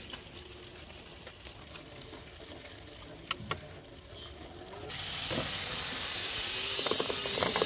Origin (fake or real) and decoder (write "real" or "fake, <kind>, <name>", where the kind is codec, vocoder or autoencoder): real